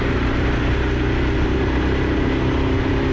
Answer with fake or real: real